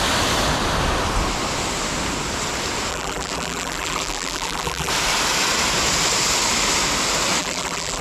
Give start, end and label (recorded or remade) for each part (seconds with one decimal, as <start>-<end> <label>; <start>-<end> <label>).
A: 0.0-2.9 recorded; 2.9-4.9 remade; 4.9-7.4 recorded; 7.4-8.0 remade